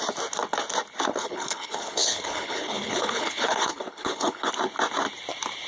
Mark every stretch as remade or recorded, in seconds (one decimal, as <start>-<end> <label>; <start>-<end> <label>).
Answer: 0.0-1.1 recorded; 1.1-4.5 remade; 4.5-5.7 recorded